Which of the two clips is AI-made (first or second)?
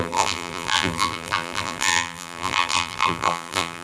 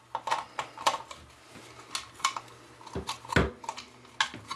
first